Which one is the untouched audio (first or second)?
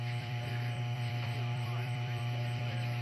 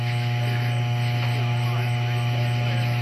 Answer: second